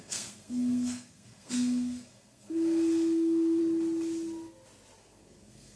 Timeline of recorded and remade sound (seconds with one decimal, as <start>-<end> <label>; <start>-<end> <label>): 0.0-3.6 remade; 3.6-5.0 recorded; 5.0-5.8 remade